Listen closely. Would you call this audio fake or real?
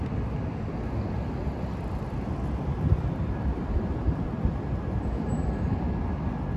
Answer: real